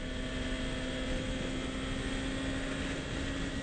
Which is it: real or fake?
real